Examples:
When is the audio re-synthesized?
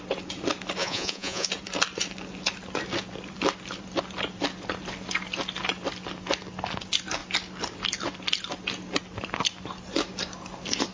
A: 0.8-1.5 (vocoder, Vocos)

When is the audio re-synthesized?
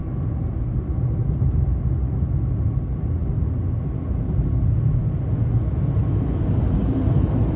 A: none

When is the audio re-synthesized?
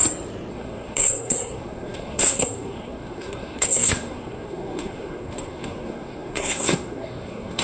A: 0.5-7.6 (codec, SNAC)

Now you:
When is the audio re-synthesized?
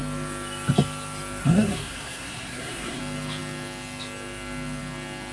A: 1.4-3.0 (codec, SNAC)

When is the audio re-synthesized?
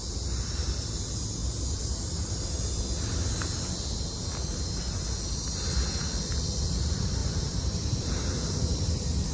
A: 7.2-8.6 (vocoder, BigVGAN v2)